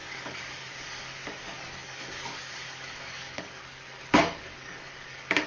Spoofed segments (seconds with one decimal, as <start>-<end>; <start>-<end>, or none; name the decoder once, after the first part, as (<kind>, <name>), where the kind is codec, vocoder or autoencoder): 0.0-5.5 (codec, DAC)